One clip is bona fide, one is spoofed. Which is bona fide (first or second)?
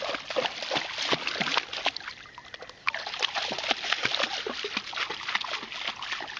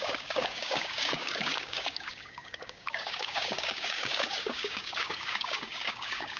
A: first